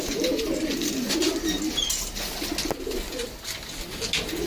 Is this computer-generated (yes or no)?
no